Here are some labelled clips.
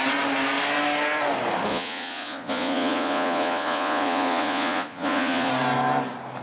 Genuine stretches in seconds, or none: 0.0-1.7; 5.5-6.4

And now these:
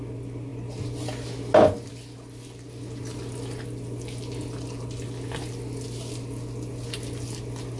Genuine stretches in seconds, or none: 0.0-7.8

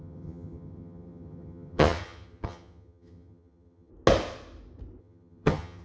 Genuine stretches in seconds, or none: 3.9-5.0

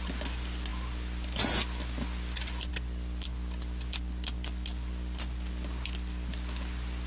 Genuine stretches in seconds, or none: 0.0-7.1

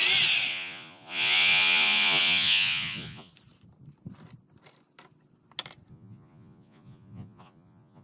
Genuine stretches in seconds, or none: 0.0-0.5; 3.3-5.9